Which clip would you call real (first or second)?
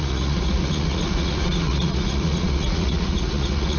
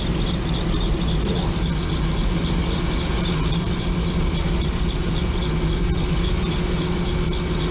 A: second